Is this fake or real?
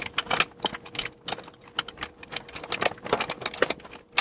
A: real